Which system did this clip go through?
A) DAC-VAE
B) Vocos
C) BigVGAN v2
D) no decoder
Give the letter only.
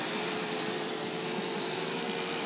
C